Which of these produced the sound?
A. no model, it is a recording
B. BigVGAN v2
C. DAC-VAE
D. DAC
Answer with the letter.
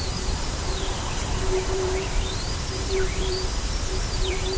B